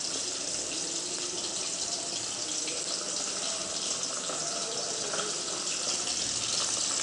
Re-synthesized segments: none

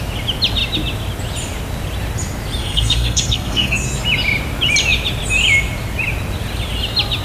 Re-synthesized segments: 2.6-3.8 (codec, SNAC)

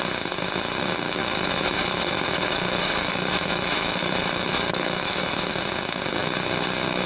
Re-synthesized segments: 1.2-5.5 (autoencoder, DAC-VAE)

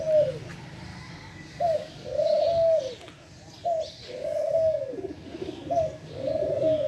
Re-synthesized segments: 0.9-2.8 (codec, DAC); 4.0-6.9

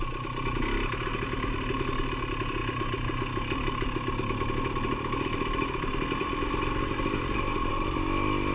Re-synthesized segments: none

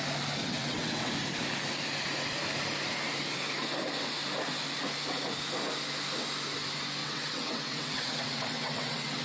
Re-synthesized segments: 0.4-1.1 (vocoder, WaveNeXt); 7.0-9.2